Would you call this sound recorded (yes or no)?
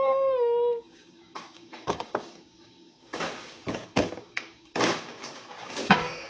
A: no